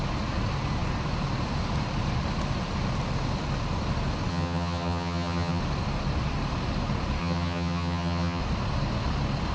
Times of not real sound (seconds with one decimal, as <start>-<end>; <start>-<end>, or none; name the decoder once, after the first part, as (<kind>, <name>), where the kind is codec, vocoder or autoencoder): 4.3-5.6 (vocoder, HiFi-GAN); 7.2-8.4